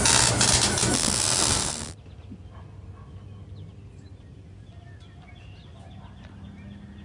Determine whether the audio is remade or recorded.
recorded